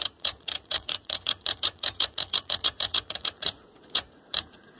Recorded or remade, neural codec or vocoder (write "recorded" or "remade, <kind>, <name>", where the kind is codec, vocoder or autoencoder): remade, vocoder, Vocos